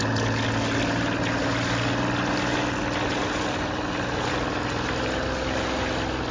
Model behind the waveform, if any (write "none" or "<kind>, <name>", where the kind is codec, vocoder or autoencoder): none